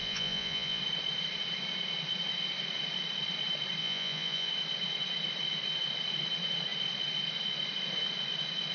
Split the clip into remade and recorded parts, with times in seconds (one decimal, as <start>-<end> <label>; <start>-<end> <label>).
0.0-0.8 remade; 0.8-3.8 recorded; 3.8-4.5 remade; 4.5-8.7 recorded